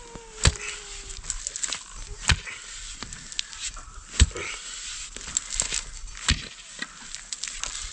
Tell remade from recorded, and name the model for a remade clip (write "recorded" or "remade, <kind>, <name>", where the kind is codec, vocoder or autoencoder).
recorded